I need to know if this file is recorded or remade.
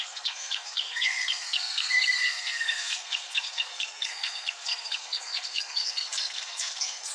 remade